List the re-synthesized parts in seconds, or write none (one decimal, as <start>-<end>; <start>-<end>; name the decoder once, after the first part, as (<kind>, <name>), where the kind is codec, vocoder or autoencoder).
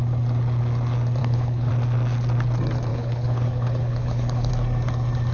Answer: 1.2-1.7 (codec, HILCodec); 2.9-4.5